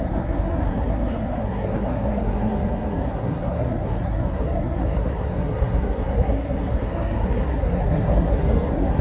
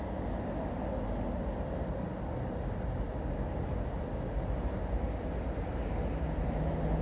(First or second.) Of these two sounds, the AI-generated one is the first